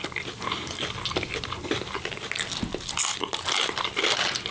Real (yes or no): yes